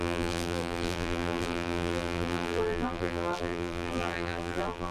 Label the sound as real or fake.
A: fake